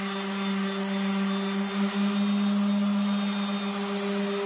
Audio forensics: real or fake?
real